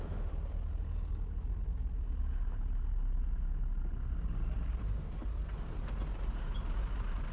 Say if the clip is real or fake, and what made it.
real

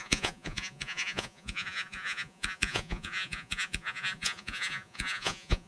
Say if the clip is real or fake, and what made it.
fake, vocoder, Vocos